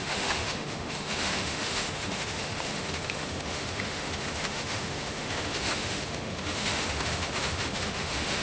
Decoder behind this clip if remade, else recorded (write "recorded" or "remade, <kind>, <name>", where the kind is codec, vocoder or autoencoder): remade, autoencoder, DAC-VAE